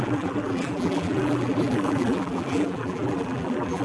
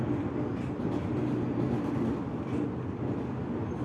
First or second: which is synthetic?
first